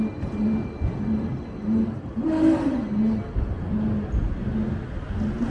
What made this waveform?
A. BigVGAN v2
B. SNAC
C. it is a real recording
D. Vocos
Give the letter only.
C